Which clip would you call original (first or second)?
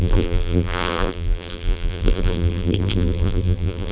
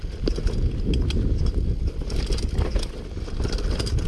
second